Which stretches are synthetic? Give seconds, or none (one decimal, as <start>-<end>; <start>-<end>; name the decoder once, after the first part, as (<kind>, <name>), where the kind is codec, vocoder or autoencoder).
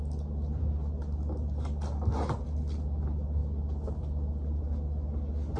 none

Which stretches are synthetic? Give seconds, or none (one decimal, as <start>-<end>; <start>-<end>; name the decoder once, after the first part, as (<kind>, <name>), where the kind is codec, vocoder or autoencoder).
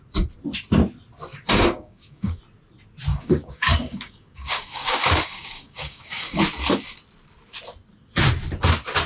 1.3-2.4 (codec, DAC); 3.1-6.4